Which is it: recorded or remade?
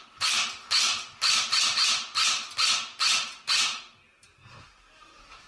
recorded